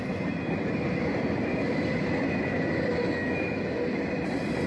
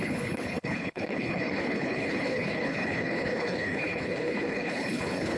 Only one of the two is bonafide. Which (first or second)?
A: first